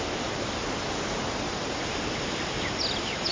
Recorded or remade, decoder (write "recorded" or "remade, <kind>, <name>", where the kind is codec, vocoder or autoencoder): recorded